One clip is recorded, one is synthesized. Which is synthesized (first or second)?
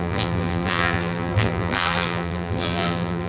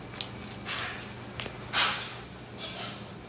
first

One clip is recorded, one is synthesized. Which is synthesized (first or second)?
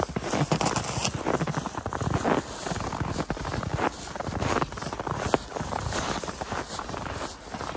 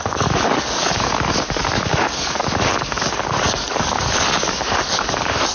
second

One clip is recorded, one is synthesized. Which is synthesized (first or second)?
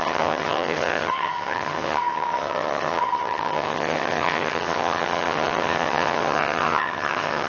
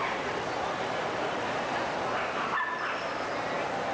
first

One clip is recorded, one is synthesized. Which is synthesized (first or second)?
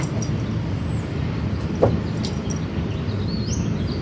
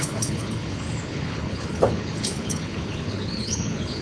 second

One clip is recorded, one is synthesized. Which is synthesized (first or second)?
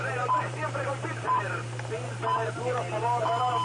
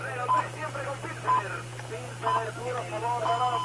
first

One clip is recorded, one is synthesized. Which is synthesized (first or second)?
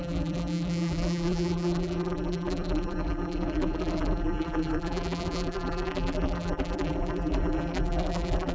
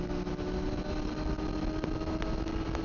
first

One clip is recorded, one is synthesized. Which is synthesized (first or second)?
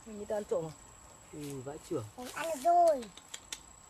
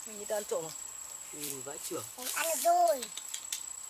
second